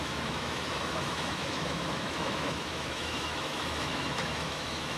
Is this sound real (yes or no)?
no